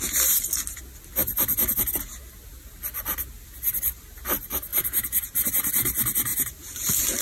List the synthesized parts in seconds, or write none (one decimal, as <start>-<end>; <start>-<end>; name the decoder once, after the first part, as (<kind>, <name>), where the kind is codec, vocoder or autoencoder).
4.7-5.5 (vocoder, BigVGAN v2); 6.3-7.2